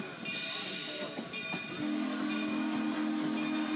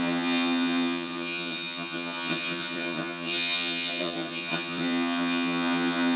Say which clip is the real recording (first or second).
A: first